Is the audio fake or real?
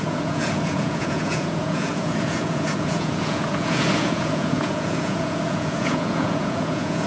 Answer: fake